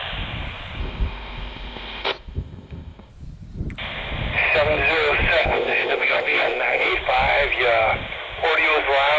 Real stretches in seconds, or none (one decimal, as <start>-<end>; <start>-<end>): 0.0-0.8; 3.1-5.4; 6.9-9.2